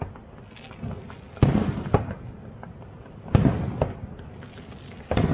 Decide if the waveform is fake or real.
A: real